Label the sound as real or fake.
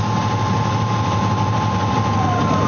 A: real